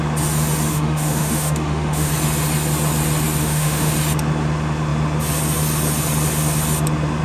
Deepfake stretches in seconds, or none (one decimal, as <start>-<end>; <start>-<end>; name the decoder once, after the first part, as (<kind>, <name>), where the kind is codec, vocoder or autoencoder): 0.7-2.1 (autoencoder, DAC-VAE); 3.4-3.9